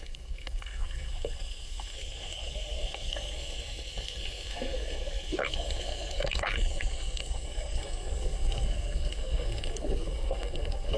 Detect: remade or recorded remade